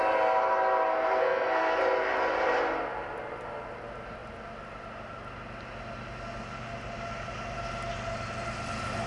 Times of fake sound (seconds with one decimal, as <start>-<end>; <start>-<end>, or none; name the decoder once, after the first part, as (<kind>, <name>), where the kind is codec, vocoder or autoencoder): 0.9-1.8 (codec, SNAC)